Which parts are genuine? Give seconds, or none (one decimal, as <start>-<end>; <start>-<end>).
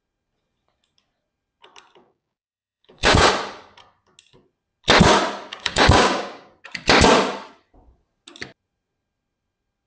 0.0-2.0; 3.3-5.5; 6.5-9.9